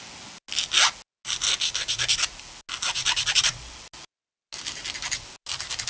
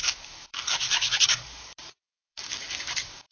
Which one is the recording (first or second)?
first